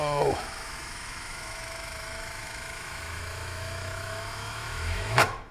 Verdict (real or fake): fake